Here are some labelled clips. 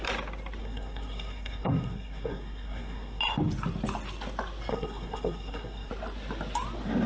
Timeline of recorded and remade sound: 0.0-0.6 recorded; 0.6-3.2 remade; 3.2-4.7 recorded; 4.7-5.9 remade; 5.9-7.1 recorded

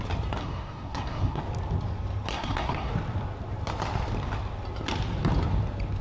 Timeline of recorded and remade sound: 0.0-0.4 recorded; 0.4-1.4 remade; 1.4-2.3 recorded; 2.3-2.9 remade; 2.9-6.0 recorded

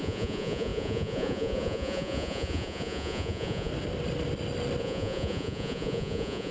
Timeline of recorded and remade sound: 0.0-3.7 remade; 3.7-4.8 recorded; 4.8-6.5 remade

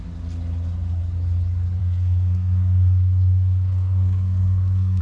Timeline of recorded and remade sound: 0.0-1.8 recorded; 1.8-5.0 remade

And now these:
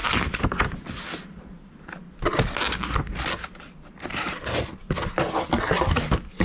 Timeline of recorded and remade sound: 0.0-6.4 recorded

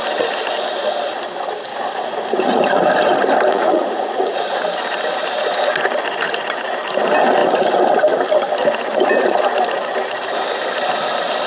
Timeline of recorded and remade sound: 0.0-1.7 recorded; 1.7-2.6 remade; 2.6-3.5 recorded; 3.5-4.4 remade; 4.4-11.5 recorded

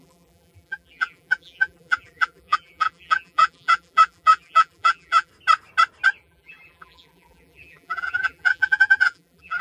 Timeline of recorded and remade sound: 0.0-5.3 remade; 5.3-6.2 recorded; 6.2-9.6 remade